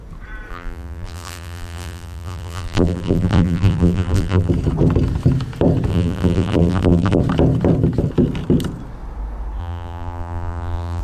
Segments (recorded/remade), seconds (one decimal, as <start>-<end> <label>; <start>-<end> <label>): 0.0-0.5 recorded; 0.5-4.5 remade; 4.5-5.9 recorded; 5.9-7.2 remade; 7.2-9.6 recorded; 9.6-11.0 remade